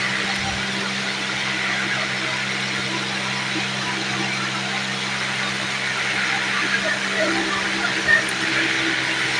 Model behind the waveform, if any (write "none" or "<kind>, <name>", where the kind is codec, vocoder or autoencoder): none